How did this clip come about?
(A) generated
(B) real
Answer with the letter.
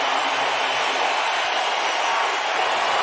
B